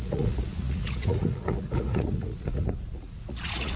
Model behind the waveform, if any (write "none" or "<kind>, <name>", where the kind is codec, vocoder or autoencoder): vocoder, Vocos